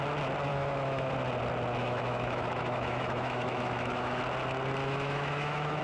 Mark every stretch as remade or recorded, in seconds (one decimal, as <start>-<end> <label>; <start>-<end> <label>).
0.0-0.5 recorded; 0.5-1.1 remade; 1.1-1.8 recorded; 1.8-4.2 remade; 4.2-4.8 recorded; 4.8-5.8 remade